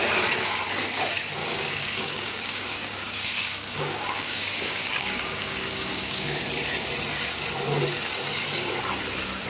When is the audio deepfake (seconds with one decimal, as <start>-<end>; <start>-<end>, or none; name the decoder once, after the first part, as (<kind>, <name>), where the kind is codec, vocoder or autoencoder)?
1.4-6.4 (codec, DAC)